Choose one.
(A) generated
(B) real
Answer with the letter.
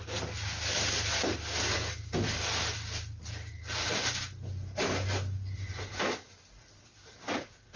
B